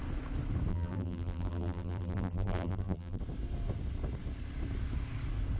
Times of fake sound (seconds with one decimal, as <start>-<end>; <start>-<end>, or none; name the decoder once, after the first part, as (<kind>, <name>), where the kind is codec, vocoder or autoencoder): 0.7-3.2 (vocoder, BigVGAN v2)